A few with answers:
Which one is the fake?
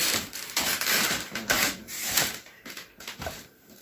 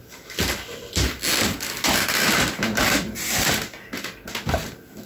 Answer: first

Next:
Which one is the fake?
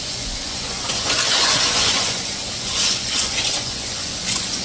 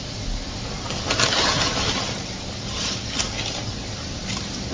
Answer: first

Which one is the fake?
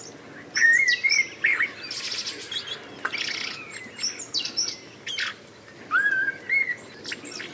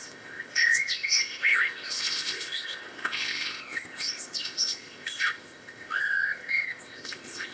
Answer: second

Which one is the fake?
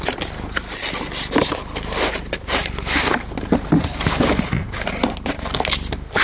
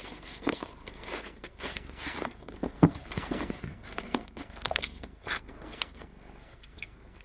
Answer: second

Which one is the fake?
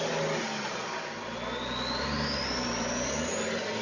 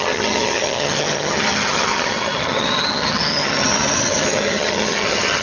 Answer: second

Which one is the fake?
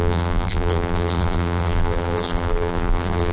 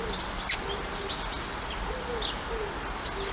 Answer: first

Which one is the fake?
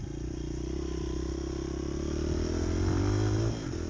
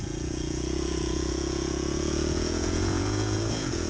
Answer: second